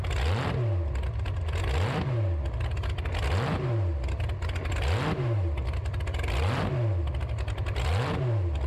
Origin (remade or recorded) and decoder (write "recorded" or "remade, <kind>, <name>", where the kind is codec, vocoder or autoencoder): recorded